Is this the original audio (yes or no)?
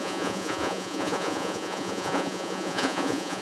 no